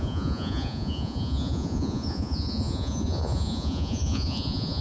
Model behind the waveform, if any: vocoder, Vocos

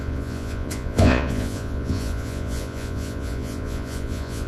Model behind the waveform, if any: vocoder, Vocos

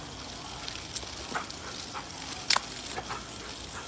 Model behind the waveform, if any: none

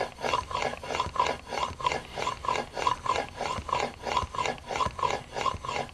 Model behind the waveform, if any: none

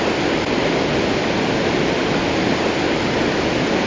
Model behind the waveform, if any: none